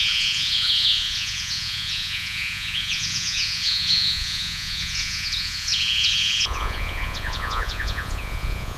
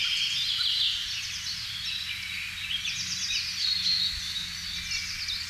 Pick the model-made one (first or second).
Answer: first